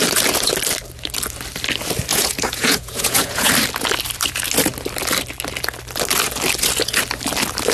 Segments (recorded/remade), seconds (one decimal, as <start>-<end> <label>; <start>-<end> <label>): 0.0-2.1 recorded; 2.1-3.5 remade; 3.5-7.7 recorded